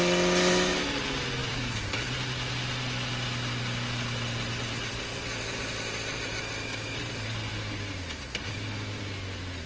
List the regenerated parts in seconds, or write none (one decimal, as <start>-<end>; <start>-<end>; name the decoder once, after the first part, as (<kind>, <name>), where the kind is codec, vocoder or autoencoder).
1.4-1.9 (vocoder, BigVGAN v2); 7.5-9.0